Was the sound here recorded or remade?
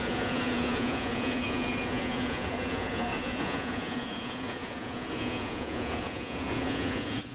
remade